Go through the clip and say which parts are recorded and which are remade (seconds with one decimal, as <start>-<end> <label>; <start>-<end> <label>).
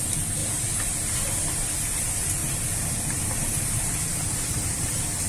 0.0-5.3 recorded